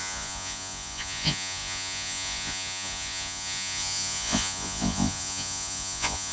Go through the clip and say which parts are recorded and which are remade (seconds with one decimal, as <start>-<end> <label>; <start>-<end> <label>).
0.0-6.3 remade